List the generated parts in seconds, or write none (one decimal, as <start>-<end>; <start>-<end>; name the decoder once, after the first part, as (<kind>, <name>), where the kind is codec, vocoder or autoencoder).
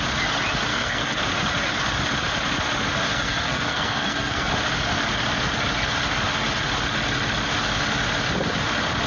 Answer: 0.7-1.2 (codec, SNAC); 3.1-4.5